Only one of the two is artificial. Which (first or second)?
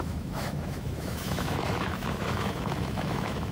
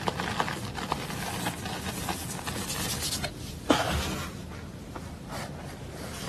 first